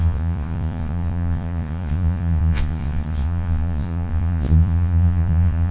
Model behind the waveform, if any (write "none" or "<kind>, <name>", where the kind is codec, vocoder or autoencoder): vocoder, Vocos